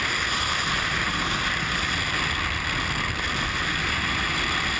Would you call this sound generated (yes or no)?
no